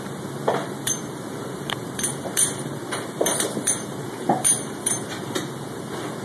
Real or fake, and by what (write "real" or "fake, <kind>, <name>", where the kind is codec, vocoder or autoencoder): fake, vocoder, BigVGAN v2